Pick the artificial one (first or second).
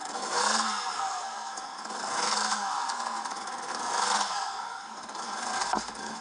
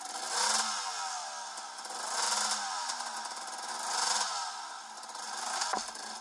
first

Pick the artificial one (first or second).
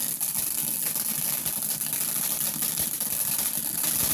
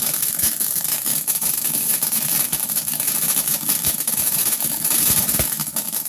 second